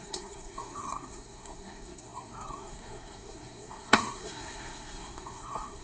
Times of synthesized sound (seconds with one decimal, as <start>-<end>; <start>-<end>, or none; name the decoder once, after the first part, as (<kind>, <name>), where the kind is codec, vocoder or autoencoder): 0.0-5.8 (codec, SNAC)